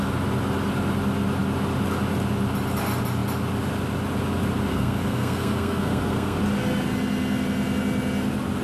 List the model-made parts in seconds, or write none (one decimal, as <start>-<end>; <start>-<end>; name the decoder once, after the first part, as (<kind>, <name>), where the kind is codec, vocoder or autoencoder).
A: 4.7-6.4 (codec, SNAC)